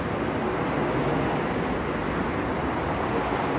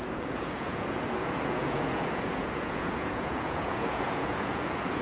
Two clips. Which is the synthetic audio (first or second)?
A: second